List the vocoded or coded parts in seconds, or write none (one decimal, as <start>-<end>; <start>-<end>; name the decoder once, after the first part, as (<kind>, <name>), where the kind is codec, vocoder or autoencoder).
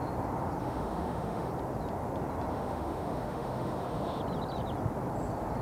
0.6-1.5 (autoencoder, DAC-VAE); 2.5-4.2